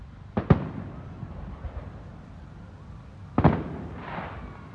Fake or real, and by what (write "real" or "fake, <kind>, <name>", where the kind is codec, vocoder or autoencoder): real